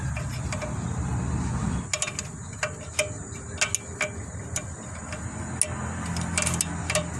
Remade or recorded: recorded